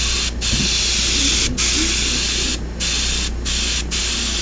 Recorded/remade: recorded